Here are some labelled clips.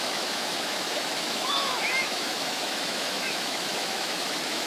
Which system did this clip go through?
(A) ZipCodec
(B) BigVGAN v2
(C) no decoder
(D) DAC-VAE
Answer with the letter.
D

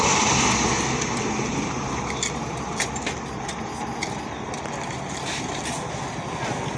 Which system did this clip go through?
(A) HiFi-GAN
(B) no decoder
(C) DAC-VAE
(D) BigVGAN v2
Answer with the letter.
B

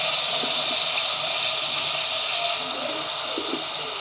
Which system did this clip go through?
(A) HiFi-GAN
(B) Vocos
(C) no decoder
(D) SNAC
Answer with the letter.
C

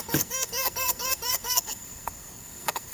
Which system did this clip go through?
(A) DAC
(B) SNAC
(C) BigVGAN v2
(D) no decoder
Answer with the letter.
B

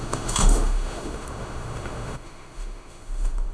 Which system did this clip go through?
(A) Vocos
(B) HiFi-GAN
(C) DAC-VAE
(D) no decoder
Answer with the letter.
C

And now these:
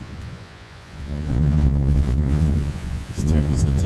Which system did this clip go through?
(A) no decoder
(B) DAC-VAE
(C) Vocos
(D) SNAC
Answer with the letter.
C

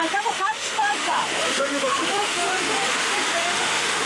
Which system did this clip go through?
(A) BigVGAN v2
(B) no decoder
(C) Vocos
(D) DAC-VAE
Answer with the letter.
D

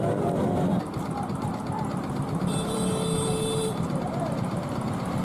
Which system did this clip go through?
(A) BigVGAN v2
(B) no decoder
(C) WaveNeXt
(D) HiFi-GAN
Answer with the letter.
A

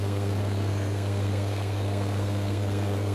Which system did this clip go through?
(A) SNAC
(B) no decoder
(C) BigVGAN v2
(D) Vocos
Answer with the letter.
A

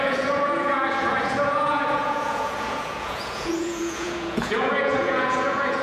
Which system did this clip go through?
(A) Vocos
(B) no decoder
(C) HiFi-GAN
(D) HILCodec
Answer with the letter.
A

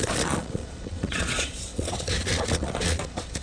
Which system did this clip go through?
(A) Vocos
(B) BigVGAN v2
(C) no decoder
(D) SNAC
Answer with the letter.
A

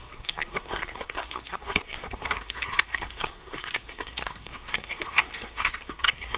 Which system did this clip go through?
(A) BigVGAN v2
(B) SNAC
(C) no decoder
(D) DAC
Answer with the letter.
B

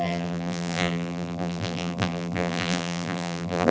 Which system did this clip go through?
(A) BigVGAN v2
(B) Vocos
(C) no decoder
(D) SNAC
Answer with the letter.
A